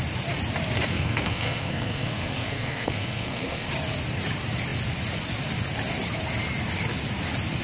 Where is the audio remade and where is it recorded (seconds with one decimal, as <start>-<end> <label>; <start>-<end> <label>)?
0.0-0.9 recorded; 0.9-3.7 remade; 3.7-7.6 recorded